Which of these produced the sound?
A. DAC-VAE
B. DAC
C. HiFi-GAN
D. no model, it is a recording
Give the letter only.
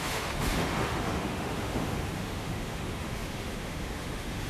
A